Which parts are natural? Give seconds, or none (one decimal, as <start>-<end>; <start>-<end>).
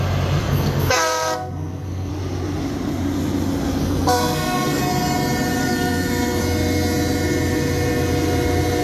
0.0-0.4; 2.1-3.8; 4.8-5.6; 6.4-8.8